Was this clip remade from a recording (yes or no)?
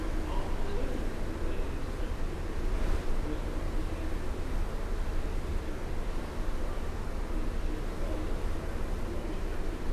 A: no